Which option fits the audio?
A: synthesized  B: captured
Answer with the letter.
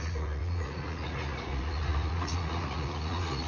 A